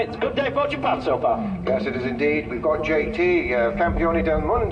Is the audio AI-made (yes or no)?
no